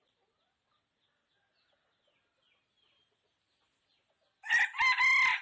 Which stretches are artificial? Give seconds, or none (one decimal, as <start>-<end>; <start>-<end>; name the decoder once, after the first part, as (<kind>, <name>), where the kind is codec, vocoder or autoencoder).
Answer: none